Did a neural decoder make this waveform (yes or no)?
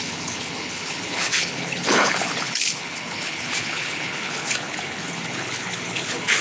yes